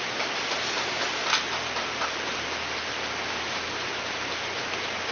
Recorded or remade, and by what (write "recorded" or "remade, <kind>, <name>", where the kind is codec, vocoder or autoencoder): recorded